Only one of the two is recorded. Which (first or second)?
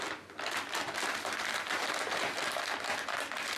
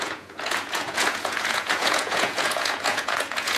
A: first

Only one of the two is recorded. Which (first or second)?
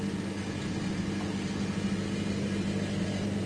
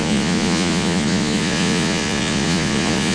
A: first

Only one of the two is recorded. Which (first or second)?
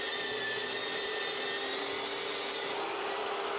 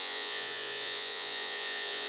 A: first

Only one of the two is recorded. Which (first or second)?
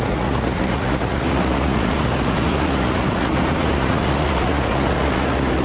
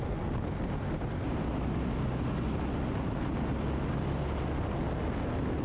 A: second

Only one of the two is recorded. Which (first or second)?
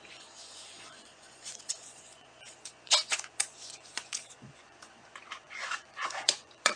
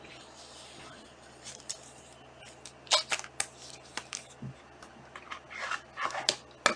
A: second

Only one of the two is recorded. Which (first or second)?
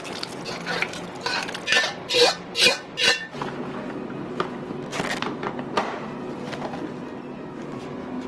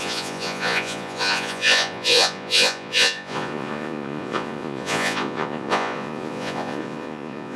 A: first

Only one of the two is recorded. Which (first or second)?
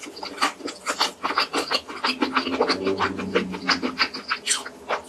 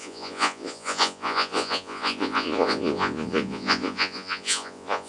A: first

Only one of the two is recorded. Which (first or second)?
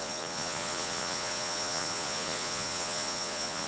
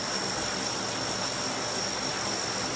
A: second